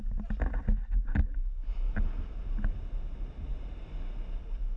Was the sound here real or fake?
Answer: real